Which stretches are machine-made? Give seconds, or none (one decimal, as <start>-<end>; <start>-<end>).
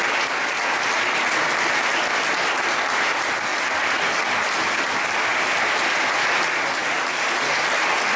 3.5-5.3; 6.8-7.3